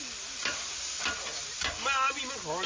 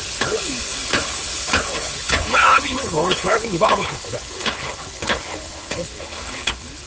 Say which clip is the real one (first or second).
first